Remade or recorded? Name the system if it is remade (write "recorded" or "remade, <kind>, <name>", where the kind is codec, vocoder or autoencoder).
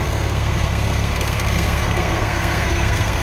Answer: remade, codec, SNAC